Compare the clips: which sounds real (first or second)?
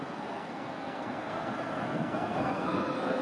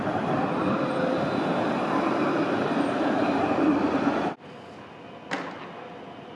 second